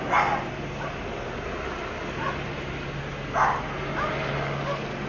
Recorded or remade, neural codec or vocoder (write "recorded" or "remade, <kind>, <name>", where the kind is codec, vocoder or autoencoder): recorded